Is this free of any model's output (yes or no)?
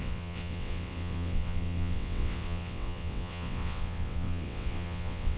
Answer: no